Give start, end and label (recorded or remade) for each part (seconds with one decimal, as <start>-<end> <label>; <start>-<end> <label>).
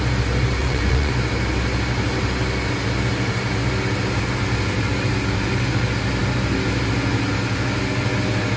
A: 0.0-0.6 recorded; 0.6-1.1 remade; 1.1-8.6 recorded